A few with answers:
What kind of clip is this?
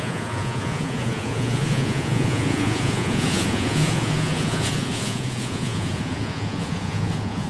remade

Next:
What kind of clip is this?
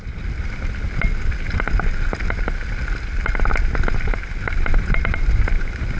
recorded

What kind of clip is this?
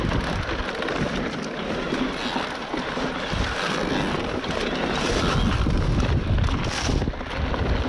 recorded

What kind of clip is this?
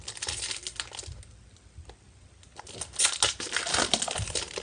recorded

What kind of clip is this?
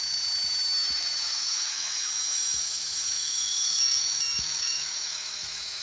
remade